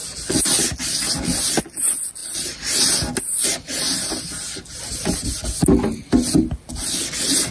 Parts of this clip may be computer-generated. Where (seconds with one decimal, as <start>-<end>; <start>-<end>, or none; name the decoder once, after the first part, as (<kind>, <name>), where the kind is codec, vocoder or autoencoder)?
none